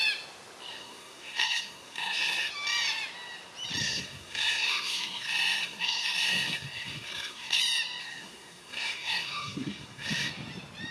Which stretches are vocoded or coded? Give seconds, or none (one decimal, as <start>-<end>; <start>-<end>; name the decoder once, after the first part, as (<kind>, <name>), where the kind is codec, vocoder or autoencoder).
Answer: 0.7-2.5 (codec, SNAC); 3.8-7.6; 8.0-10.3